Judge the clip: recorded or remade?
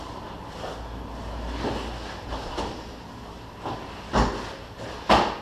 recorded